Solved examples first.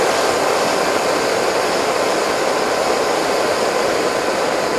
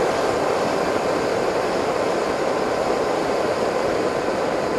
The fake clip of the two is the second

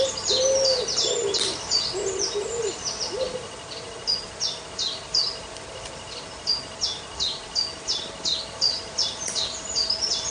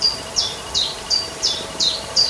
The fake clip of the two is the second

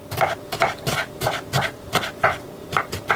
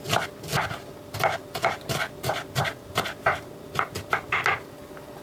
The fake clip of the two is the first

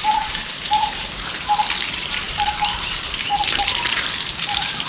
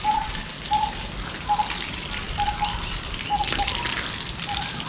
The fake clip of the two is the first